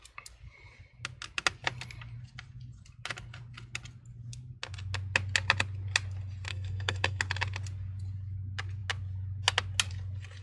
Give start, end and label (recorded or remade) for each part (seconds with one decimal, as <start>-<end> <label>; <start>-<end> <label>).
0.0-6.5 recorded; 6.5-7.2 remade; 7.2-10.4 recorded